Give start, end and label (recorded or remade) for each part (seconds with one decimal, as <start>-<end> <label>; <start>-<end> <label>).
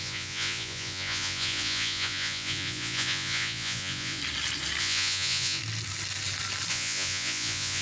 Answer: 0.0-4.2 remade; 4.2-4.8 recorded; 4.8-5.6 remade; 5.6-6.7 recorded; 6.7-7.8 remade